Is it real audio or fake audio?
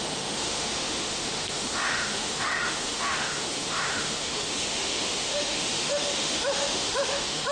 fake